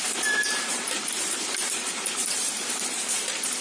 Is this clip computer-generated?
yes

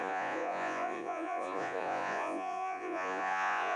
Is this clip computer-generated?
yes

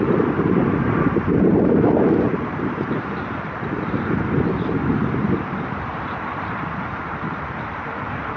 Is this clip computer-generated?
yes